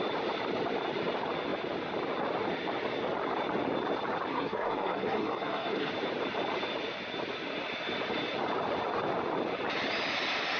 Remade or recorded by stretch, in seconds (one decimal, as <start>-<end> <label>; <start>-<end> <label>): 0.0-4.3 recorded; 4.3-5.9 remade; 5.9-10.6 recorded